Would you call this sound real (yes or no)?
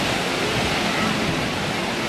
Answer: yes